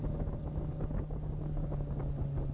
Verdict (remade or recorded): recorded